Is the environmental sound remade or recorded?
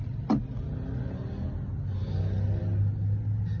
recorded